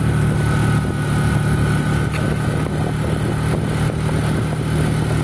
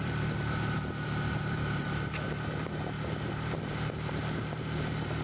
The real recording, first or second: first